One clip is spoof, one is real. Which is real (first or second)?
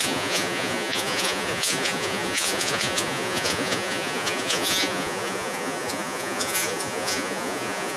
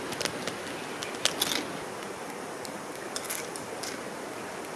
second